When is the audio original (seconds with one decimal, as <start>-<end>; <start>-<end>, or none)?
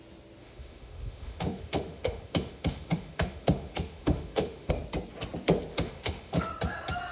0.0-0.4; 4.7-5.7; 6.5-7.1